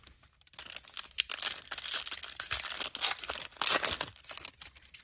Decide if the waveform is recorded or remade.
remade